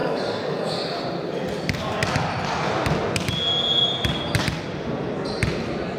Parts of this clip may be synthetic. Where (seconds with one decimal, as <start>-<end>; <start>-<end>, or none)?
0.0-0.7